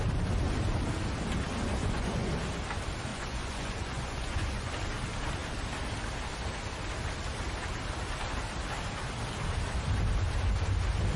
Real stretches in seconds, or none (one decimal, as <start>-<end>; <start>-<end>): 0.0-1.8; 2.3-3.1; 4.7-11.2